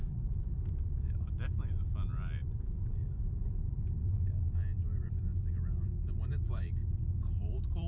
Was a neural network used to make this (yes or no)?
yes